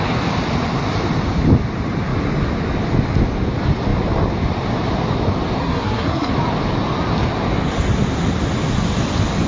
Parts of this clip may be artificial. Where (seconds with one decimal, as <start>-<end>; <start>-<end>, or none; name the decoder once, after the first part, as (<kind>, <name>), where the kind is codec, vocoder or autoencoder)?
5.6-6.3 (codec, SNAC)

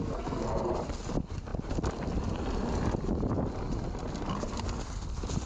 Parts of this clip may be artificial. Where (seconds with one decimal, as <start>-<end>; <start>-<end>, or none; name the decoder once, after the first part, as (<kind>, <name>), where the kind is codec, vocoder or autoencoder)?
0.0-0.6 (codec, SNAC)

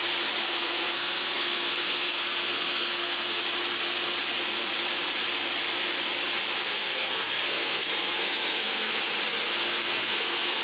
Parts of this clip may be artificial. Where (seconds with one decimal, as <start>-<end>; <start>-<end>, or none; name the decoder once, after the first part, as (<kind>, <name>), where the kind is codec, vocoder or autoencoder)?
0.4-3.4 (codec, SNAC); 6.6-8.9; 9.7-10.6